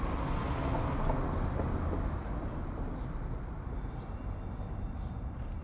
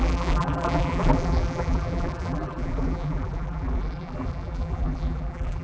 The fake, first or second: second